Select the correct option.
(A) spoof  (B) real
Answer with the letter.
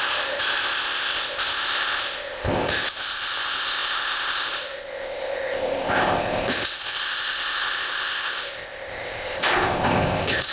A